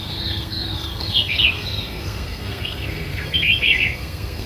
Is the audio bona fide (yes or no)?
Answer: no